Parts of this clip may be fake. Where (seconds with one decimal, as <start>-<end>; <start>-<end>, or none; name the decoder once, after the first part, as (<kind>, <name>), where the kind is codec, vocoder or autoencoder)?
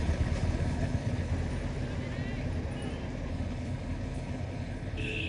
0.0-1.3 (codec, HILCodec); 3.3-5.3